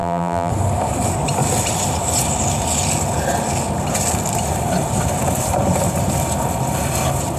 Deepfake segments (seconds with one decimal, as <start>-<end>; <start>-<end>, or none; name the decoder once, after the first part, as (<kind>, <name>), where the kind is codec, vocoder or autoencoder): 0.0-0.5 (vocoder, BigVGAN v2)